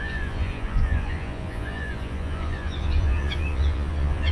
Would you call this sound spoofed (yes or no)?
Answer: yes